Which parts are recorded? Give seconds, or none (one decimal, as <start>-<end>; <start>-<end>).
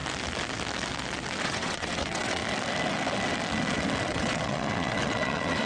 0.0-1.4; 2.4-4.0